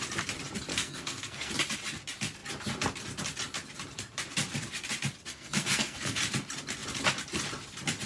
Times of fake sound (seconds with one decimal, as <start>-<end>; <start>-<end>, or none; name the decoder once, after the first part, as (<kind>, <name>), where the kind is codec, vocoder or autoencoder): 0.7-1.5 (codec, SNAC); 5.3-6.2